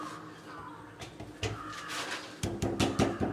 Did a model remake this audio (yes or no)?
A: no